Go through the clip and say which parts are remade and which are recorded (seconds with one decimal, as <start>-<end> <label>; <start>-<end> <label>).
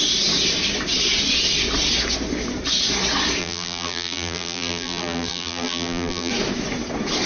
0.0-3.4 recorded; 3.4-6.3 remade; 6.3-7.3 recorded